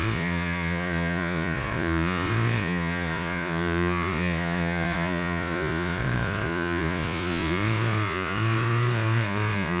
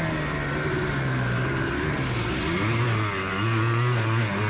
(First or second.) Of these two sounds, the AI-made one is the first